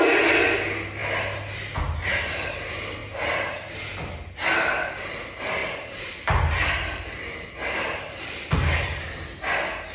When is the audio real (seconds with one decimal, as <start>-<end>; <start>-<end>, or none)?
0.0-5.6; 6.1-9.9